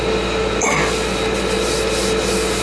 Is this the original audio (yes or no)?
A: yes